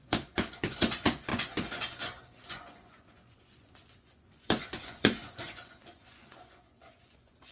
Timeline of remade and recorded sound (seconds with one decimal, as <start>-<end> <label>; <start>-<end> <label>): 0.0-7.5 remade